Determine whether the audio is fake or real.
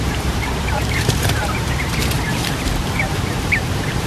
fake